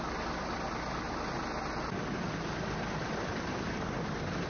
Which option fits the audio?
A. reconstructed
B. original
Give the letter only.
B